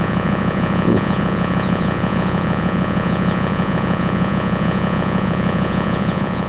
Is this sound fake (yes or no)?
yes